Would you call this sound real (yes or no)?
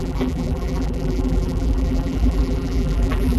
no